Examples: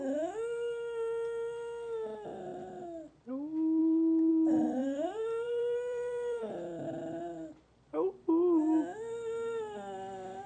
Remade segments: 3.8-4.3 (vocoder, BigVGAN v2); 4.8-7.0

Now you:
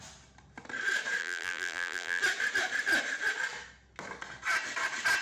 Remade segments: 1.2-2.2 (vocoder, BigVGAN v2)

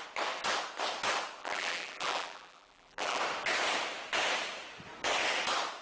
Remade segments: 1.4-3.2 (vocoder, BigVGAN v2)